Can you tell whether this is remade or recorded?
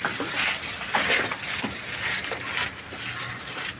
recorded